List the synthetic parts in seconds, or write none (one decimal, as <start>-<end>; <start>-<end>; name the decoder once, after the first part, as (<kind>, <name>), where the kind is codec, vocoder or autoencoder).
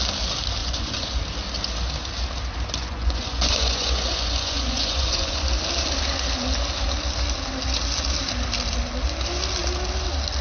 0.6-1.2 (vocoder, Vocos); 2.8-5.4